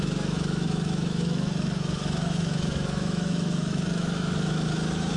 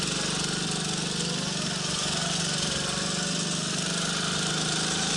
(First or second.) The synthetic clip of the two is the first